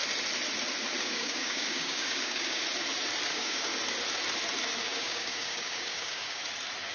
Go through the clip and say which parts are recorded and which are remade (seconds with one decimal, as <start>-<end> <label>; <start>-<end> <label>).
0.0-1.0 recorded; 1.0-2.6 remade; 2.6-3.3 recorded; 3.3-3.7 remade; 3.7-4.8 recorded; 4.8-6.4 remade; 6.4-6.9 recorded